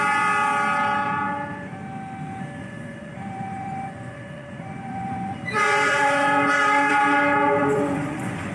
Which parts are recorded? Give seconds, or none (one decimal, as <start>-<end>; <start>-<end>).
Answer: 0.0-2.6; 6.9-7.6